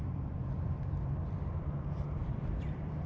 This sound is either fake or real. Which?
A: fake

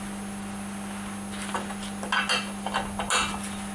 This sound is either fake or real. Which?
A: real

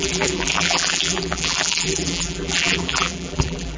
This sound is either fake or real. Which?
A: fake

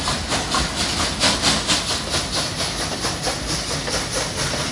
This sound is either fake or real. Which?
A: real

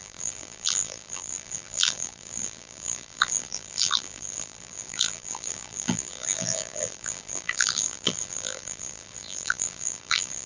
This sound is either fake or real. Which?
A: fake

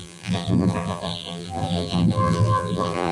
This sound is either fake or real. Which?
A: fake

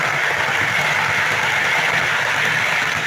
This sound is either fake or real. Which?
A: real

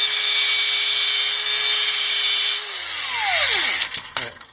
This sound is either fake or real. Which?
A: real